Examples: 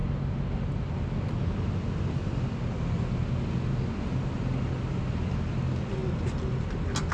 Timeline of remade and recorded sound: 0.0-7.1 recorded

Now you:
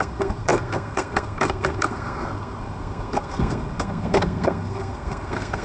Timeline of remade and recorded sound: 0.0-5.6 remade